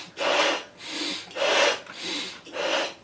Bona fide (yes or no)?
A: yes